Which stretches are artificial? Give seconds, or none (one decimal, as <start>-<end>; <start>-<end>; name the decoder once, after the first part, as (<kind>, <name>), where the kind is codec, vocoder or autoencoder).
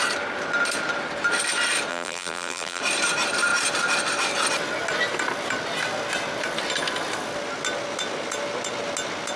1.9-2.8 (vocoder, BigVGAN v2)